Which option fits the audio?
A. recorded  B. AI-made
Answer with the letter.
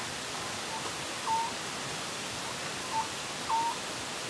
A